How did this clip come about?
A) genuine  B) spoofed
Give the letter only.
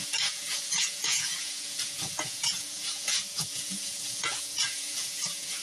B